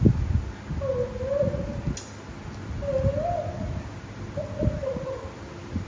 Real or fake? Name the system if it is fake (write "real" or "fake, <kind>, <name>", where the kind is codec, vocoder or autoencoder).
real